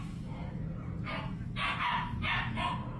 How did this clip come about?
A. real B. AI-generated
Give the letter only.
A